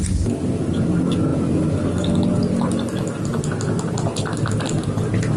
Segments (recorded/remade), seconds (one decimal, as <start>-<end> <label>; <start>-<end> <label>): 0.0-5.4 recorded

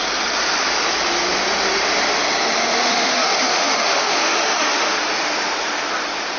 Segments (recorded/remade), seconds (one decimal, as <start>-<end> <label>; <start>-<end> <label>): 0.0-2.9 recorded; 2.9-4.9 remade; 4.9-6.4 recorded

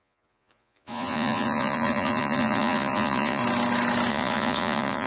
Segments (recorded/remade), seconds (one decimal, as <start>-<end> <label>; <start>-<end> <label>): 0.0-3.4 remade; 3.4-4.1 recorded; 4.1-5.1 remade

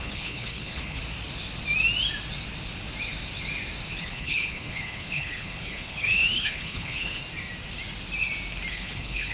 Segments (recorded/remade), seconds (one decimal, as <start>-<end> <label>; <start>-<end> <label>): 0.0-1.0 remade; 1.0-4.0 recorded; 4.0-7.2 remade; 7.2-8.7 recorded; 8.7-9.3 remade

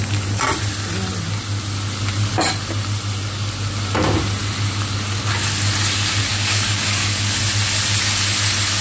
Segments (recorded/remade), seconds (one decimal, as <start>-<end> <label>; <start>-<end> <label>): 0.0-6.3 recorded; 6.3-7.4 remade; 7.4-8.8 recorded

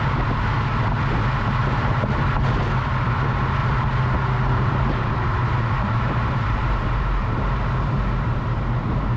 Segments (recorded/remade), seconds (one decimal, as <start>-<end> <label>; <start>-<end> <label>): 0.0-3.6 recorded; 3.6-6.8 remade; 6.8-9.2 recorded

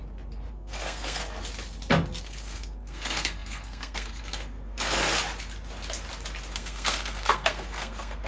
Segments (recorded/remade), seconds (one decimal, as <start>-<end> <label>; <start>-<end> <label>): 0.0-0.5 recorded; 0.5-1.2 remade; 1.2-2.2 recorded; 2.2-5.0 remade; 5.0-6.5 recorded; 6.5-8.3 remade

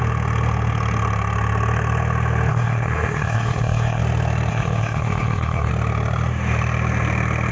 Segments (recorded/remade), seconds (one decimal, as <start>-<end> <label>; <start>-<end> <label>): 0.0-2.5 recorded; 2.5-4.0 remade; 4.0-4.5 recorded; 4.5-5.7 remade; 5.7-7.5 recorded